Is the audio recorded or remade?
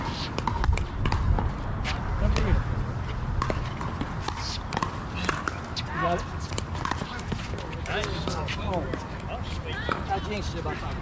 recorded